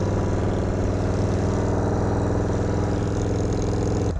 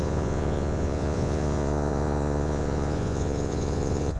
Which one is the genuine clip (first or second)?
first